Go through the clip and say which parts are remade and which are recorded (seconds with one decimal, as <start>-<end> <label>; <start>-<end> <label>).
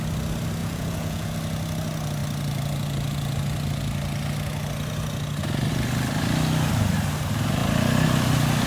0.0-0.6 recorded; 0.6-1.3 remade; 1.3-8.7 recorded